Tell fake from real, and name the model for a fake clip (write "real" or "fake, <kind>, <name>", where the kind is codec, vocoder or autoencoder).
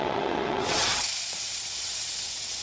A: fake, vocoder, WaveNeXt